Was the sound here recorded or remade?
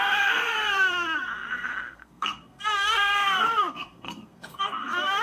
remade